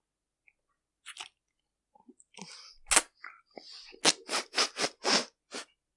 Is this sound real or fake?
real